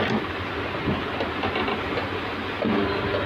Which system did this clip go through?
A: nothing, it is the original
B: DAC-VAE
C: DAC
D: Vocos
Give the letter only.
A